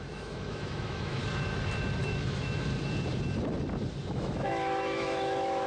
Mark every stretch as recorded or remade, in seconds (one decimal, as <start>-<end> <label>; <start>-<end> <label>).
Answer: 0.0-1.2 remade; 1.2-2.0 recorded; 2.0-2.7 remade; 2.7-4.1 recorded; 4.1-5.7 remade